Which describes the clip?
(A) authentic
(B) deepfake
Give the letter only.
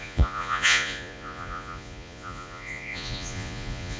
B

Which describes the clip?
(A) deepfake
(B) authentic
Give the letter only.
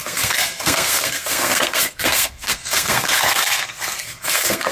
A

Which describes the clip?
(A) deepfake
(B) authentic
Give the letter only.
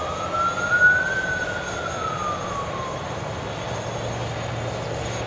B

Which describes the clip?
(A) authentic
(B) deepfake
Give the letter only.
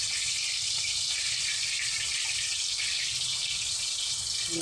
A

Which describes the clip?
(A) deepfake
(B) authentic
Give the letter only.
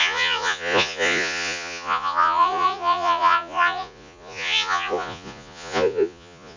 A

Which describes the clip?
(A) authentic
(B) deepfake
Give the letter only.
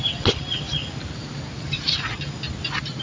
A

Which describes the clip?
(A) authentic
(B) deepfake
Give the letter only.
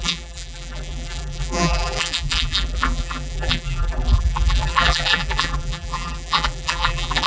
B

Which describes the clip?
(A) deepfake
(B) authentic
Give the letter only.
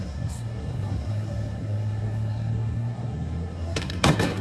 A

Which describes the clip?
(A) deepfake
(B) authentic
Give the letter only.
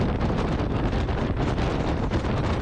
B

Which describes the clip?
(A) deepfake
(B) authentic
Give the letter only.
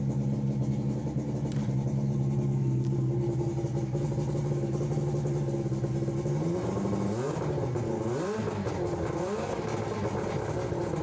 B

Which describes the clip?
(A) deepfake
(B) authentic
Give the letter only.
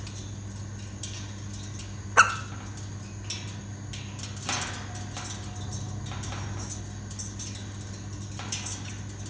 B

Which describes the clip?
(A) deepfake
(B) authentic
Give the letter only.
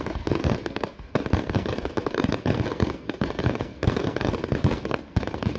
A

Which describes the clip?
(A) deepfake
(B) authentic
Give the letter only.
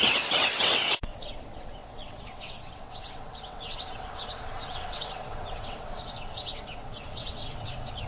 A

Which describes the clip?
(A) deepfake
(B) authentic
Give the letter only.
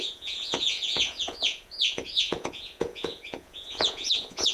A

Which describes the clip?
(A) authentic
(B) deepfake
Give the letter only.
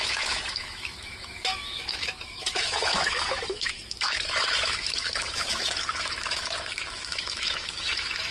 B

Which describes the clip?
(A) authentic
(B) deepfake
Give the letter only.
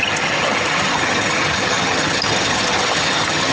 B